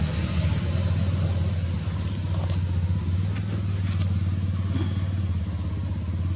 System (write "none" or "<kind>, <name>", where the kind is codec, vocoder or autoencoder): none